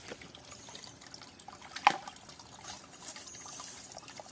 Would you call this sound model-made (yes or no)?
no